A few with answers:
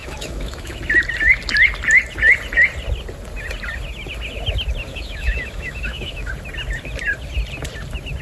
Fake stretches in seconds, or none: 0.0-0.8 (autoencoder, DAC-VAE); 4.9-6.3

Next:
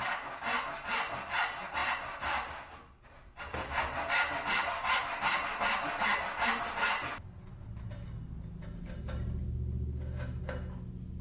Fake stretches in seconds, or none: none